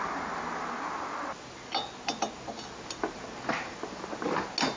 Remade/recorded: recorded